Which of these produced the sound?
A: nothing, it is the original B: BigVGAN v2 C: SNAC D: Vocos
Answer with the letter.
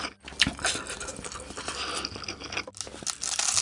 A